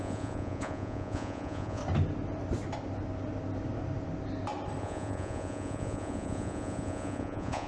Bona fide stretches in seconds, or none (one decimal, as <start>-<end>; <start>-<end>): 1.8-4.8